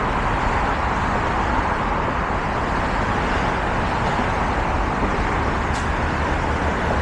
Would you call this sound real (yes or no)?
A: yes